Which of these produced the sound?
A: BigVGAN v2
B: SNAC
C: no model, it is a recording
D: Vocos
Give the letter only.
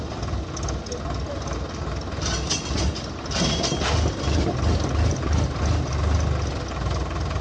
C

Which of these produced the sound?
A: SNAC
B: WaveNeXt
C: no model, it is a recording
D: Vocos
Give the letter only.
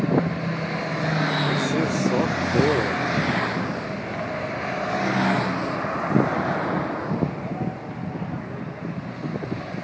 C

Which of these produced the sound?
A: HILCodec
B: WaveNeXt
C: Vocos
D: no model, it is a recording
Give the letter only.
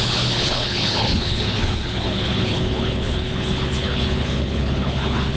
A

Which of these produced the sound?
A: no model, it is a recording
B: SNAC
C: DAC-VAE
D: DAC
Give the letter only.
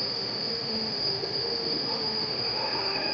C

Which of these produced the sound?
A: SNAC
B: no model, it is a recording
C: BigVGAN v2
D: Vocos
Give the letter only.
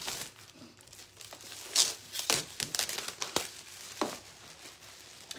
B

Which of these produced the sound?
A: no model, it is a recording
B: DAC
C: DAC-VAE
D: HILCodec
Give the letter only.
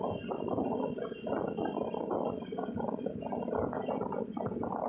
A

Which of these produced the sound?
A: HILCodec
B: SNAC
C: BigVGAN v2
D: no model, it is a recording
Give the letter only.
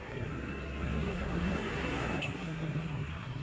B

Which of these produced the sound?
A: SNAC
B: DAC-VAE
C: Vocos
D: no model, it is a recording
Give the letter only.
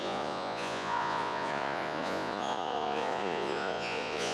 C